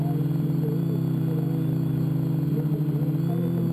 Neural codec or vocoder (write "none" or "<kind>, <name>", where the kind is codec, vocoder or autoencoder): none